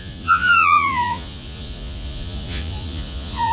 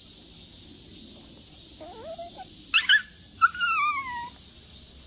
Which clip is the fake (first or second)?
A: first